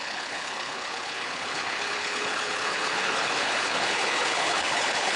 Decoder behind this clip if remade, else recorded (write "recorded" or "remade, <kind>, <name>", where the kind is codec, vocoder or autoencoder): remade, codec, HILCodec